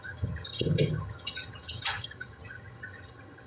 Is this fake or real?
fake